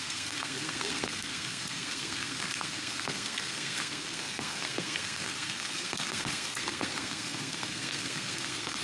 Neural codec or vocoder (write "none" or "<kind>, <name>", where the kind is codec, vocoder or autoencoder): codec, SNAC